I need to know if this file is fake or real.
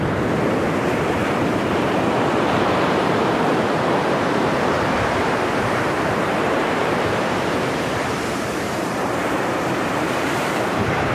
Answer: fake